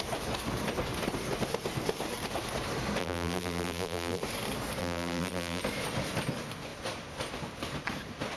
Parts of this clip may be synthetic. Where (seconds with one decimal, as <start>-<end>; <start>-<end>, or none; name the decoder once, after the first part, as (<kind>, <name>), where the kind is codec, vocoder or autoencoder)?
3.0-4.2 (vocoder, BigVGAN v2); 4.8-5.6